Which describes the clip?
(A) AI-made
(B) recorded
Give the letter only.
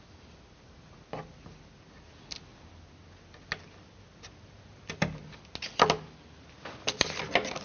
B